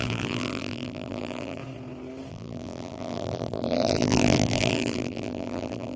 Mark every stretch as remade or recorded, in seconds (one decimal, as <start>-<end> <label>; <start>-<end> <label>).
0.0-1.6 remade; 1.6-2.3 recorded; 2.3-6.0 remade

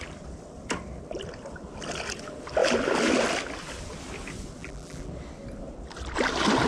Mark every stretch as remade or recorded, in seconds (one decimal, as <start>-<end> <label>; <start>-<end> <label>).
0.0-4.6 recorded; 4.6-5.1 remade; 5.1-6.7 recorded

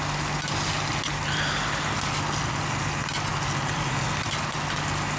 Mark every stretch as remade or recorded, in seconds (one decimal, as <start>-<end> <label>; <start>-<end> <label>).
0.0-5.2 recorded

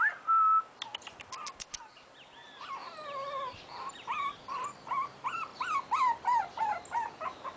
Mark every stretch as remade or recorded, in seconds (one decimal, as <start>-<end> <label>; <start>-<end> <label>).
0.0-0.9 recorded; 0.9-4.3 remade; 4.3-5.5 recorded; 5.5-6.4 remade; 6.4-7.6 recorded